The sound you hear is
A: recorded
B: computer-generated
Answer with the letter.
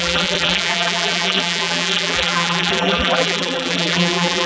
B